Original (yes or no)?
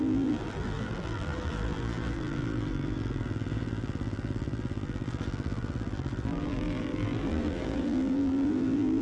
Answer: no